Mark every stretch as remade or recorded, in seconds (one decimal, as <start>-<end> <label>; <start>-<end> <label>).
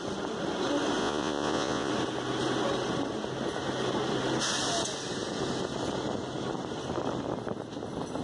0.0-1.0 recorded; 1.0-1.9 remade; 1.9-8.2 recorded